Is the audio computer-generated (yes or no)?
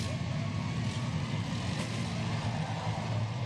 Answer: no